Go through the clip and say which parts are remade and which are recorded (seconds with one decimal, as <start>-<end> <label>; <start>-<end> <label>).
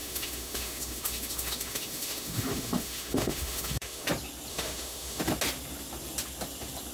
0.0-4.1 remade; 4.1-4.5 recorded; 4.5-5.2 remade; 5.2-6.9 recorded